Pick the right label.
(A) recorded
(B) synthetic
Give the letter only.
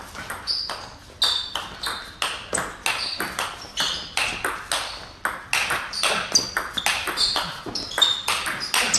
A